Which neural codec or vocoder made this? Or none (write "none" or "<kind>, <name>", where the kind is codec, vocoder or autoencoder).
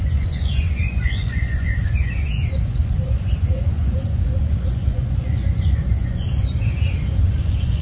vocoder, Vocos